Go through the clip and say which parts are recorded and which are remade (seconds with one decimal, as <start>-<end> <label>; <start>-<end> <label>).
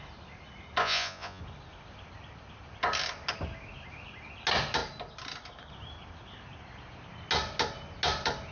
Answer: 0.0-0.8 recorded; 0.8-1.4 remade; 1.4-8.5 recorded